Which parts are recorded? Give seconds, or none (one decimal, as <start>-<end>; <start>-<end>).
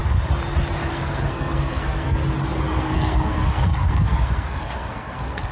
0.0-0.9; 2.2-2.8